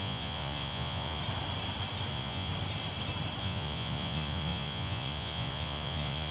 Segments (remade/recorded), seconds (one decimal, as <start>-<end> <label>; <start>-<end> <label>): 0.0-1.2 remade; 1.2-2.1 recorded; 2.1-2.5 remade; 2.5-3.4 recorded; 3.4-6.3 remade